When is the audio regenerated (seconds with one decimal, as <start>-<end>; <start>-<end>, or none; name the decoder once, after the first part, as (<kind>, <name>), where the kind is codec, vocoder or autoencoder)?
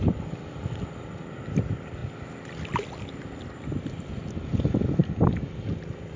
none